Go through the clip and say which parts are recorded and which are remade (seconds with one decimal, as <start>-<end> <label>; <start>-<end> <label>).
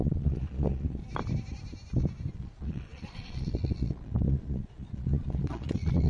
0.0-1.0 remade; 1.0-2.3 recorded; 2.3-6.1 remade